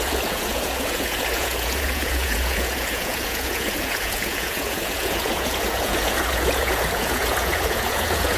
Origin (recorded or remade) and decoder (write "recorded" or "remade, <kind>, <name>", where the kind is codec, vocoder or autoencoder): remade, vocoder, Vocos